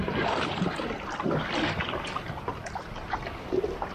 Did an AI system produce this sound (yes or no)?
yes